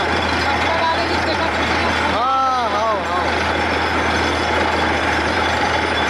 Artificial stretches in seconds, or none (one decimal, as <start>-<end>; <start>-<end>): 0.0-1.8; 5.0-6.1